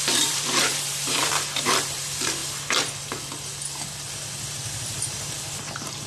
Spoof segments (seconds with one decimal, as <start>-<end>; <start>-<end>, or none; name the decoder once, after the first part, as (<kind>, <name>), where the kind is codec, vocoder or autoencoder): 0.0-2.4 (vocoder, BigVGAN v2); 4.5-6.1